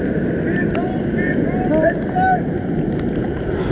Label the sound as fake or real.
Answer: real